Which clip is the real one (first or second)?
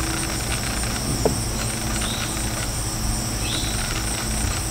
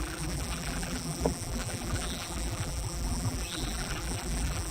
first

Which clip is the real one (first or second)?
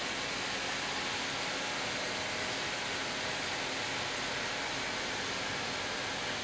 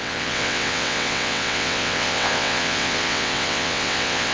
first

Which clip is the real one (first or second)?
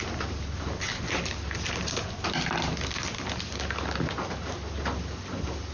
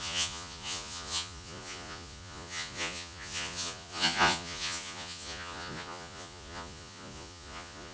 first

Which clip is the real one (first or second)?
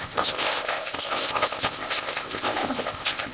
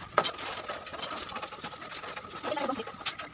second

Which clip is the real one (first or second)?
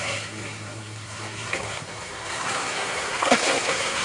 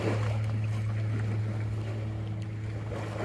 second